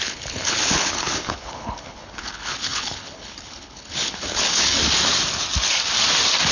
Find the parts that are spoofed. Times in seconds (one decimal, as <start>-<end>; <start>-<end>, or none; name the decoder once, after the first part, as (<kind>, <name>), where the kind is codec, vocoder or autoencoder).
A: 0.0-4.8 (codec, HILCodec)